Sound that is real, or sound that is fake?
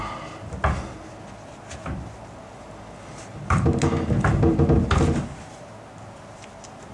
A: real